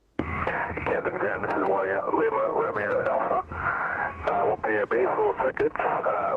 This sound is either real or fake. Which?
fake